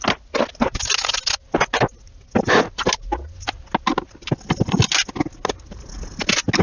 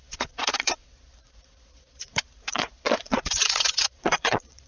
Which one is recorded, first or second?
first